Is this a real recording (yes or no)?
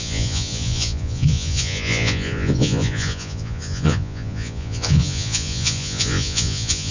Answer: no